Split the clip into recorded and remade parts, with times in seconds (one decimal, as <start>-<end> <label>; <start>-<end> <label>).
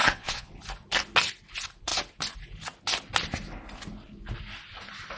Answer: 0.0-0.5 remade; 0.5-5.2 recorded